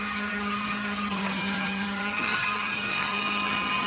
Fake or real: fake